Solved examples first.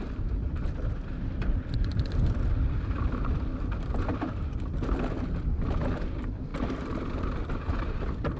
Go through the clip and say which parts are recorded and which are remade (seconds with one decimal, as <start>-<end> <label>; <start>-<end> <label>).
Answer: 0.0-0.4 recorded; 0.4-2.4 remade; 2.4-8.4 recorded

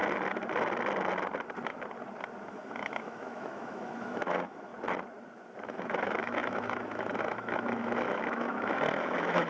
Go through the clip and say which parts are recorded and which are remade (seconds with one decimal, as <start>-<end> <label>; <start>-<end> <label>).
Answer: 0.0-2.5 recorded; 2.5-4.7 remade; 4.7-5.6 recorded; 5.6-9.5 remade

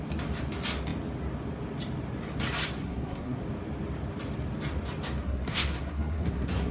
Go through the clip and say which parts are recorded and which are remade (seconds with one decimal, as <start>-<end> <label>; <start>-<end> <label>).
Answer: 0.0-2.8 recorded; 2.8-3.4 remade; 3.4-5.2 recorded; 5.2-6.7 remade

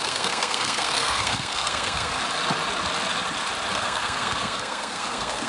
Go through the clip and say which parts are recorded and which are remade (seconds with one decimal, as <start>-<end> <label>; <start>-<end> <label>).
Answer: 0.0-2.2 remade; 2.2-3.7 recorded; 3.7-5.5 remade

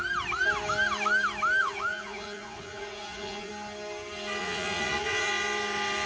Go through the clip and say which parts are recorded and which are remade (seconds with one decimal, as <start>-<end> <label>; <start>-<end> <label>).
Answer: 0.0-1.6 recorded; 1.6-3.5 remade; 3.5-4.4 recorded; 4.4-5.3 remade; 5.3-6.1 recorded